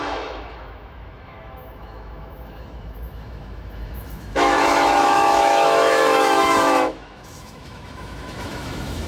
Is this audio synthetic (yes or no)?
yes